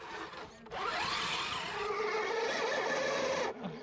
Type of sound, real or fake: real